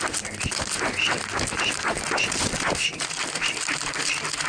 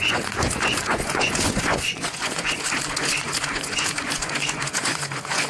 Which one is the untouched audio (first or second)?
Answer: first